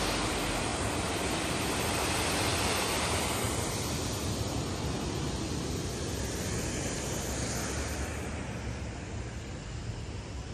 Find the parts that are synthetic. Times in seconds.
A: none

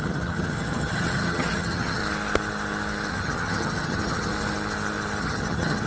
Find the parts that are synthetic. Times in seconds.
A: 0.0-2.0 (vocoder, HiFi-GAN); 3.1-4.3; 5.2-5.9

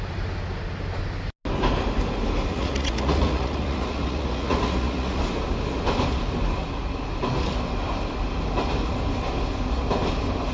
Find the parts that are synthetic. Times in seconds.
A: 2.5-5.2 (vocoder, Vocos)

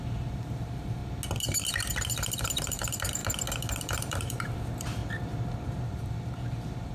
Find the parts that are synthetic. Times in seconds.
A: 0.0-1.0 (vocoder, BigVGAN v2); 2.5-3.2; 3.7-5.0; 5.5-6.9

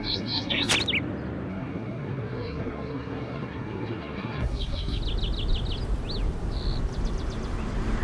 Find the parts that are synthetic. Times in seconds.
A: 0.0-0.7 (codec, SNAC); 1.5-5.0

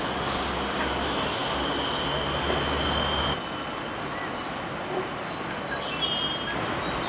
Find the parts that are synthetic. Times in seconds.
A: none